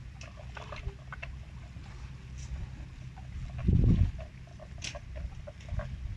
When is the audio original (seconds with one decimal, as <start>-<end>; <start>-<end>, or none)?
0.0-4.5